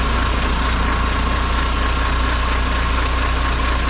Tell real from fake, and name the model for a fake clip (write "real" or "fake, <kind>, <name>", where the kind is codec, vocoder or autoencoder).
real